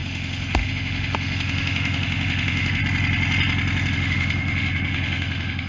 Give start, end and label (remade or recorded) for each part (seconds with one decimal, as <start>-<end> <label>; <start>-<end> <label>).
0.0-2.8 remade; 2.8-3.9 recorded; 3.9-5.7 remade